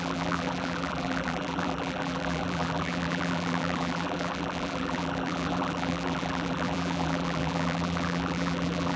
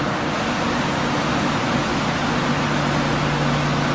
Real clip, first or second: second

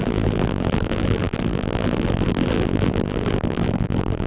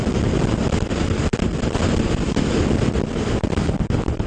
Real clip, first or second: second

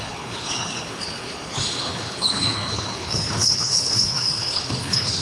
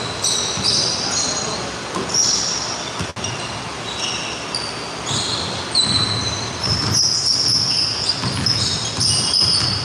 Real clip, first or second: second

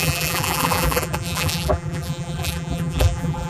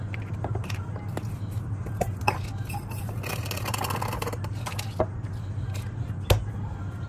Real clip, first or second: second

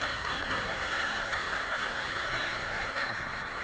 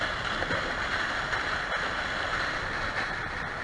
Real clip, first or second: second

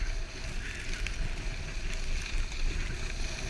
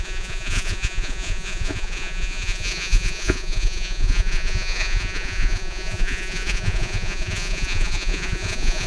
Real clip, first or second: first